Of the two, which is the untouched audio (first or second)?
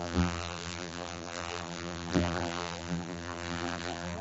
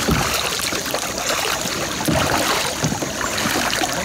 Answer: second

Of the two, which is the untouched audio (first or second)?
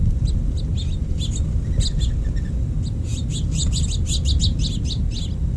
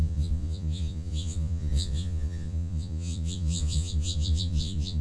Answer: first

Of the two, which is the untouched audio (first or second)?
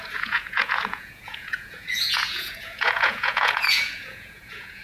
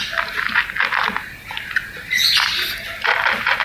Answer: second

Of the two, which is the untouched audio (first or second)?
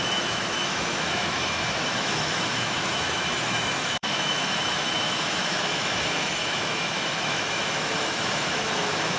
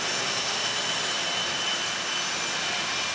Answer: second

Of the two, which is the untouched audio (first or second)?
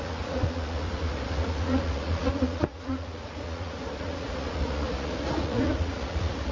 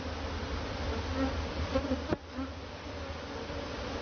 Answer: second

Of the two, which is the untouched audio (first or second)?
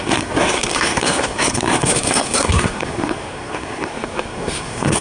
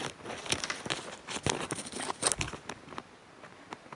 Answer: second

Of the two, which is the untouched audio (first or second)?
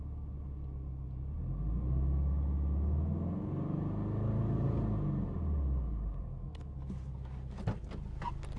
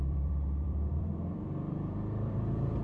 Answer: first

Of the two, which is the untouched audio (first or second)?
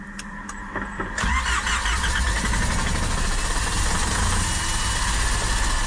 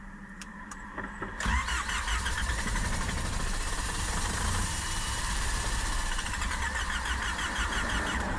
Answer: first